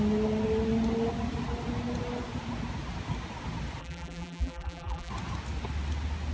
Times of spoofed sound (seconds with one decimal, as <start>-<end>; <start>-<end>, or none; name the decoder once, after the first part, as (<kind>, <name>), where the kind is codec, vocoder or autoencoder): 3.8-5.1 (vocoder, BigVGAN v2)